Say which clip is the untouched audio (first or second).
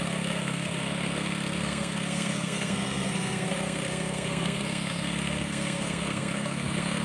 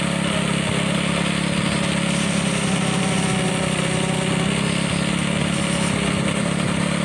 second